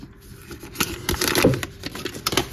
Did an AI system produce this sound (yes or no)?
no